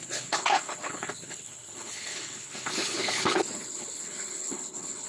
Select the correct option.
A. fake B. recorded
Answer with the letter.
A